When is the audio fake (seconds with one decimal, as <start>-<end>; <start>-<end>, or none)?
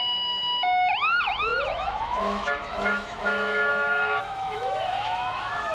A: 0.0-5.7